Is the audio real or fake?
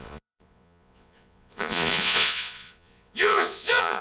fake